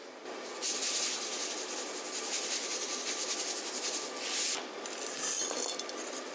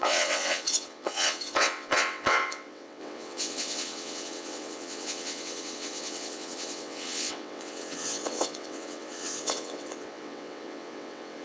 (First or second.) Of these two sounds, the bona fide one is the first